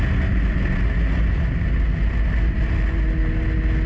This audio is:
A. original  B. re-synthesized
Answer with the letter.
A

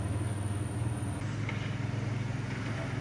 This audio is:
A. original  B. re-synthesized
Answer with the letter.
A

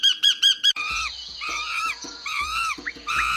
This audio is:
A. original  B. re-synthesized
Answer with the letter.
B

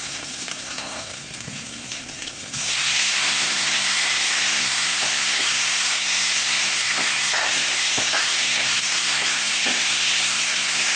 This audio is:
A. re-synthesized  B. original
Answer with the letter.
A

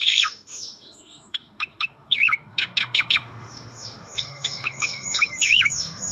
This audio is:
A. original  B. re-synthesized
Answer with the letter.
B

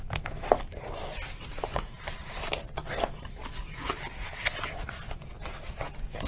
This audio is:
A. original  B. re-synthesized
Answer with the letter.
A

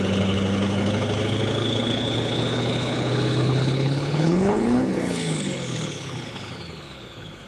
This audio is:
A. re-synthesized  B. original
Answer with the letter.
A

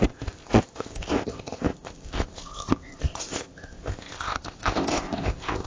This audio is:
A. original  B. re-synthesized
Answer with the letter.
B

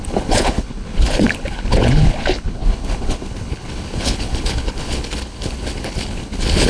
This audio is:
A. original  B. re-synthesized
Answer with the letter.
B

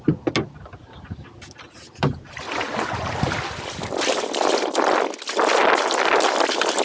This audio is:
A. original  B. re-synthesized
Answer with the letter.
A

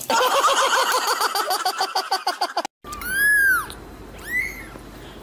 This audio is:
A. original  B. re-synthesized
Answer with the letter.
A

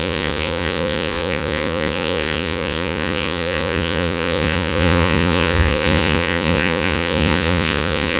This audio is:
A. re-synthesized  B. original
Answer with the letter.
A